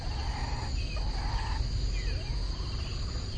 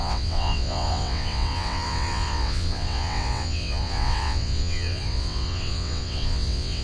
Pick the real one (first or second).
first